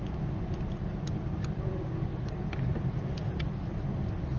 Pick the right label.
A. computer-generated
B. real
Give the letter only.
B